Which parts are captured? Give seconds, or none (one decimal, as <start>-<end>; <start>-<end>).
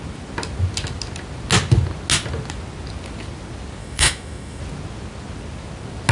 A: 0.0-3.8; 4.6-6.1